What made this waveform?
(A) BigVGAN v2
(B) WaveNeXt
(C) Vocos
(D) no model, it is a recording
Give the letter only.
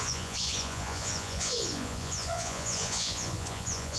C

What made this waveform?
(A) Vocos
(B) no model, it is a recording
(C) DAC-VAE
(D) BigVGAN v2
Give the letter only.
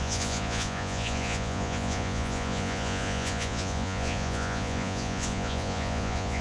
A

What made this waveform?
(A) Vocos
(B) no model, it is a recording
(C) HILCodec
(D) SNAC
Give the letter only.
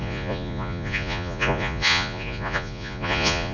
A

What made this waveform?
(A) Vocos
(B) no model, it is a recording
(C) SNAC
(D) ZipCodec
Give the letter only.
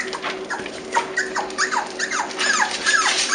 B